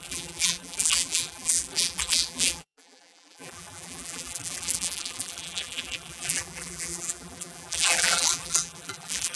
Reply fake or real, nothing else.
fake